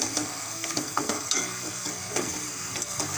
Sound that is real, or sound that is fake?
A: fake